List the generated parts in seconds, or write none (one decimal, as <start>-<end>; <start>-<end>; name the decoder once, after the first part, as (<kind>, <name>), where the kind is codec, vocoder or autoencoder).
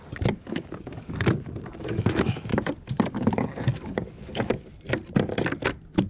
0.0-2.5 (codec, DAC); 3.1-4.5